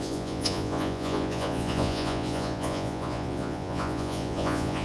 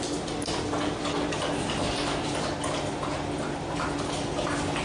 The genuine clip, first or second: second